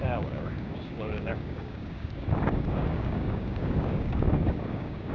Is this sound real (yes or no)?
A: no